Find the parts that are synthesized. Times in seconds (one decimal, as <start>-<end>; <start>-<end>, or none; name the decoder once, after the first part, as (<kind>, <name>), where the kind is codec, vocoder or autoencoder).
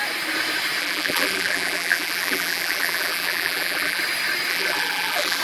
0.8-4.0 (vocoder, BigVGAN v2); 4.5-5.4